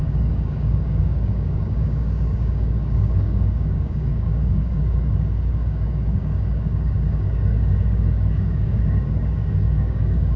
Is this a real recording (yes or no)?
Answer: no